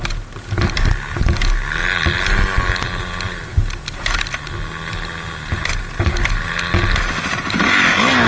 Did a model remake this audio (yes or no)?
no